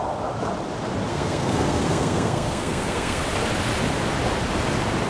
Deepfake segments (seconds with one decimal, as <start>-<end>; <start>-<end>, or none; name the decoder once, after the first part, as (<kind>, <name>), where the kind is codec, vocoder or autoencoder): 1.1-3.2 (codec, SNAC)